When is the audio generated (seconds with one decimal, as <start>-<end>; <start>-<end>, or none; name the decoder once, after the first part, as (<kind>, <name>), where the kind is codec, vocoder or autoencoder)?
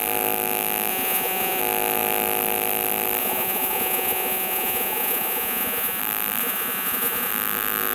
0.9-1.6 (vocoder, Vocos); 3.2-6.0; 6.4-7.3